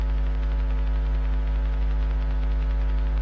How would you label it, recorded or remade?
recorded